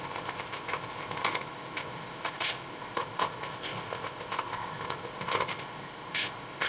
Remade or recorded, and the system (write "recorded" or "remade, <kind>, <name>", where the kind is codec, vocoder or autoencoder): remade, codec, ZipCodec